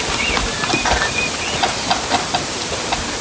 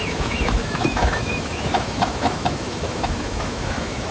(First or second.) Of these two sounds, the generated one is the second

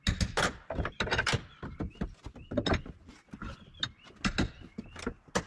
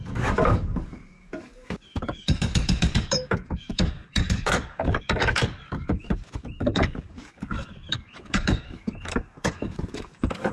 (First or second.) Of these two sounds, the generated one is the second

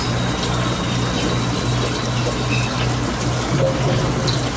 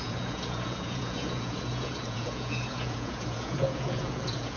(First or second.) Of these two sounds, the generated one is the second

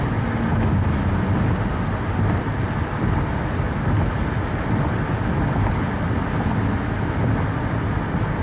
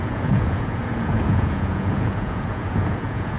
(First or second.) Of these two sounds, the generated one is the second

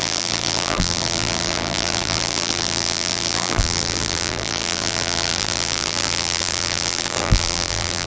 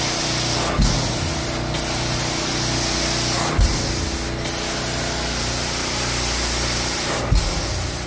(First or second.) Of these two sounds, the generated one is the first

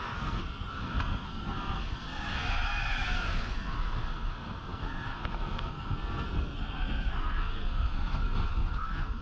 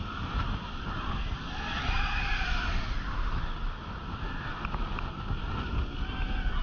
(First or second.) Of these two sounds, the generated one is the first